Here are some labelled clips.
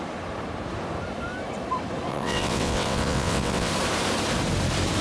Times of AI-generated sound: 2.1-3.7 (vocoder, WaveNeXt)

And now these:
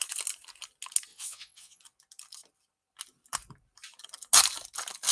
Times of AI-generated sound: 1.1-1.8 (vocoder, WaveNeXt)

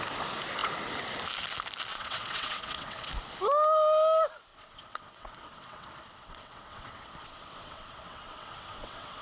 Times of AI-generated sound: 1.9-3.1 (vocoder, WaveNeXt); 4.5-9.2

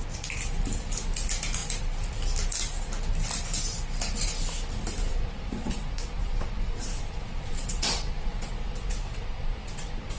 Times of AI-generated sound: 5.1-10.2 (vocoder, WaveNeXt)

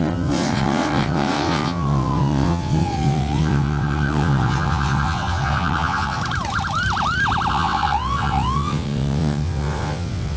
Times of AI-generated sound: 0.0-6.2 (vocoder, WaveNeXt); 7.5-10.4

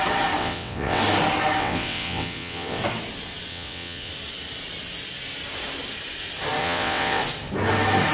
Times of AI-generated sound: 0.4-1.0 (vocoder, WaveNeXt); 1.6-2.8; 3.5-4.1; 6.6-7.2